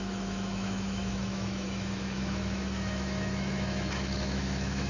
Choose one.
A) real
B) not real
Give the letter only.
B